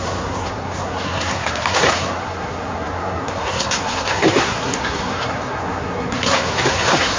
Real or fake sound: fake